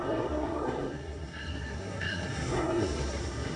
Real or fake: fake